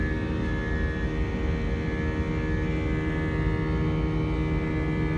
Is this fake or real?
real